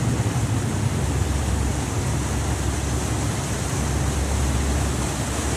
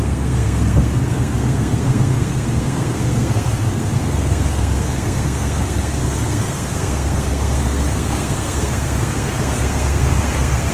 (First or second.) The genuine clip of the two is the first